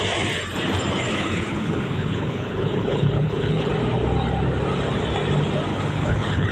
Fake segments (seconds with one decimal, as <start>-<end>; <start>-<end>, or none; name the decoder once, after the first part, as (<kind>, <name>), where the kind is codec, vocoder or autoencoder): 1.1-3.7 (codec, HILCodec); 5.7-6.5